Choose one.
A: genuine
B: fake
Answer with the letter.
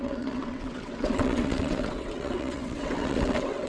B